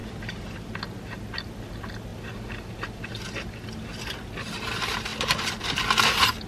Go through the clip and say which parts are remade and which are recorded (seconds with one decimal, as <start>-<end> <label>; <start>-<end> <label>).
0.0-0.8 remade; 0.8-2.1 recorded; 2.1-4.0 remade; 4.0-6.5 recorded